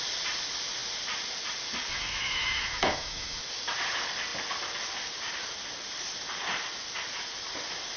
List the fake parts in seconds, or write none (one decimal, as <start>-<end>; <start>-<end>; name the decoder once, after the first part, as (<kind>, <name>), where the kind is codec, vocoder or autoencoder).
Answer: 1.9-3.4 (autoencoder, DAC-VAE)